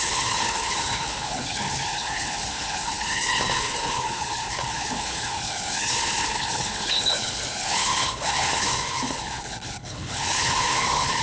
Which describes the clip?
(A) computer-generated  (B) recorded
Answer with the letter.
A